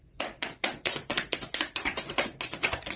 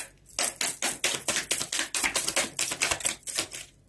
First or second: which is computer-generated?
first